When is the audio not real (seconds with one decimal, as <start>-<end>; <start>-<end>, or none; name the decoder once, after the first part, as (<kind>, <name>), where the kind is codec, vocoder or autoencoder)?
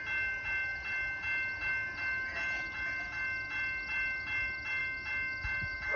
none